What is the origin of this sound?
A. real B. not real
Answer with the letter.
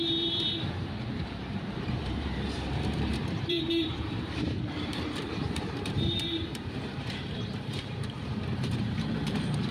B